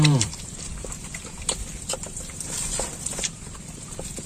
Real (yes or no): no